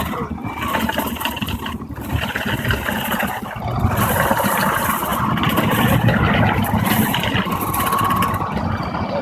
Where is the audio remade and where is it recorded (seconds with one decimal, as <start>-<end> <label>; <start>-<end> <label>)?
0.0-9.2 recorded